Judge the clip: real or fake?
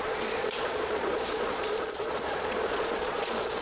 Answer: fake